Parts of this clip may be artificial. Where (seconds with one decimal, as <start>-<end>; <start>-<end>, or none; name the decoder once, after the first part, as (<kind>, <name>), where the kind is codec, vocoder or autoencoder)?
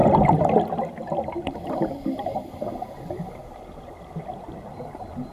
0.0-2.5 (vocoder, BigVGAN v2); 3.4-5.3